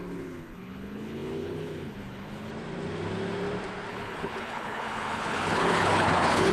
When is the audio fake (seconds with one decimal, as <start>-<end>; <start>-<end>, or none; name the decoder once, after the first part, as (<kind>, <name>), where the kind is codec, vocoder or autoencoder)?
0.0-2.5 (codec, HILCodec); 3.9-6.5